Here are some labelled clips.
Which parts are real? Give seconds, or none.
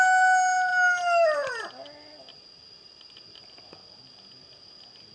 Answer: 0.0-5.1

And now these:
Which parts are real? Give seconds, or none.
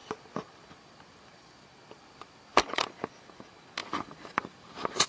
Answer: 3.1-3.8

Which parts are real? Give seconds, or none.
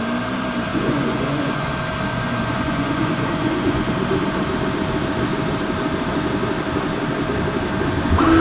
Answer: 0.0-0.7; 1.7-2.1; 3.9-8.4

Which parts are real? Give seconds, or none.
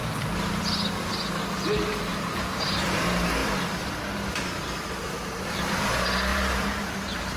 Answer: 0.6-2.1; 2.6-6.3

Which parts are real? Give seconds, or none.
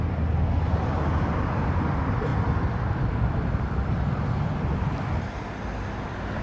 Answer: 0.0-2.3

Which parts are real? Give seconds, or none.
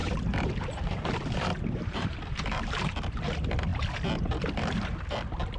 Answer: 2.9-5.6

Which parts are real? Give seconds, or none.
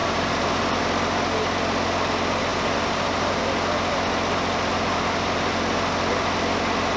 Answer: 0.8-2.5; 3.4-7.0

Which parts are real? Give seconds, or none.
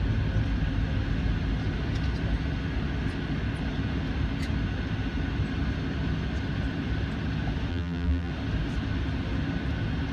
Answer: 0.0-7.7; 8.3-10.1